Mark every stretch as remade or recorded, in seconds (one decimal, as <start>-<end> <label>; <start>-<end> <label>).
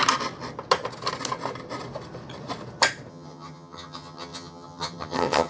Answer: 0.0-3.1 recorded; 3.1-5.5 remade